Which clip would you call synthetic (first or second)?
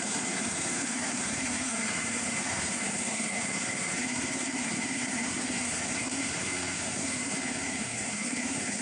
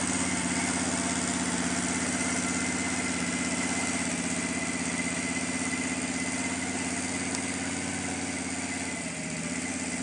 first